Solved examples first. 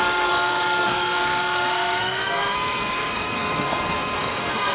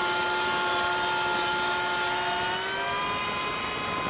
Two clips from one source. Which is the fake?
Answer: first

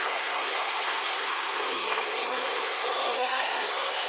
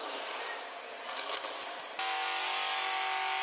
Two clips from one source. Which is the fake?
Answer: first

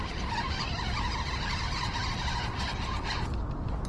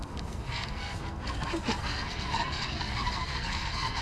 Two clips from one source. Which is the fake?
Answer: second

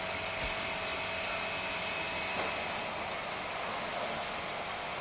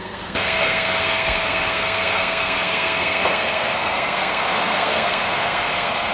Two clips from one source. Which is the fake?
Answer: second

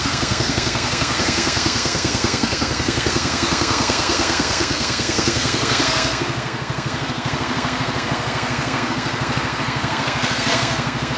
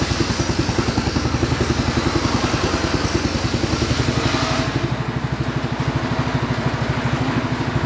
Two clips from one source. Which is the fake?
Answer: first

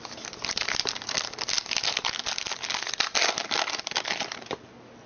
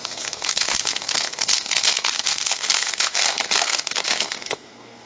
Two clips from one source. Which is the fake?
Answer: second